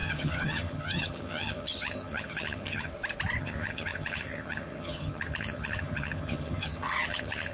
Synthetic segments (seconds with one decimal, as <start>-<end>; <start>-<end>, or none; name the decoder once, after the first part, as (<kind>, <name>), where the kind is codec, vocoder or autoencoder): 0.0-2.9 (vocoder, HiFi-GAN); 3.4-7.5